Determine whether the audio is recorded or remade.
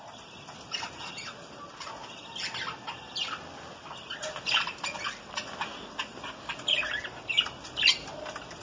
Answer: recorded